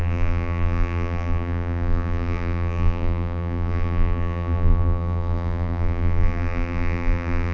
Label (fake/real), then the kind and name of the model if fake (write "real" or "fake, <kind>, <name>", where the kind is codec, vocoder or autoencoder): fake, vocoder, BigVGAN v2